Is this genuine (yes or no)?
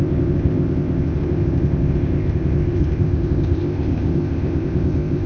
no